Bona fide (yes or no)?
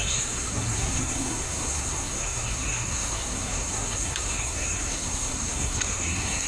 no